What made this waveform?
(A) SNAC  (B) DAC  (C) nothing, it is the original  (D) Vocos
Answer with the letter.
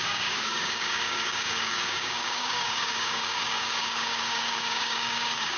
B